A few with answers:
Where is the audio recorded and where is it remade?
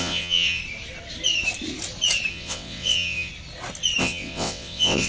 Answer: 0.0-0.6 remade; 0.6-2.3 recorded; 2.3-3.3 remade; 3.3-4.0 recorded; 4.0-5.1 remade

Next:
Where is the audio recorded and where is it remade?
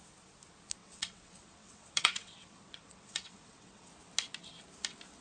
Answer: 0.0-0.8 recorded; 0.8-3.9 remade; 3.9-5.2 recorded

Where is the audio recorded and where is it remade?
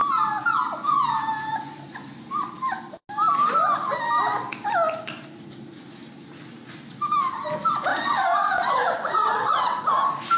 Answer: 0.0-7.9 recorded; 7.9-9.8 remade; 9.8-10.4 recorded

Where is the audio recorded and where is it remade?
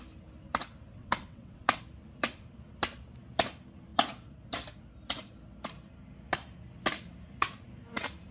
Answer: 0.0-1.0 recorded; 1.0-1.8 remade; 1.8-8.3 recorded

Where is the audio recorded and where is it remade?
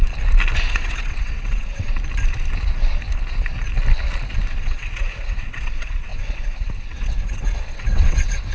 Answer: 0.0-0.7 recorded; 0.7-1.9 remade; 1.9-4.6 recorded; 4.6-8.5 remade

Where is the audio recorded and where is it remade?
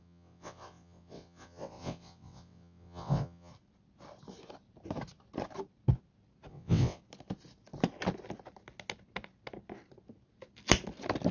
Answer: 0.0-3.5 remade; 3.5-6.5 recorded; 6.5-7.0 remade; 7.0-11.3 recorded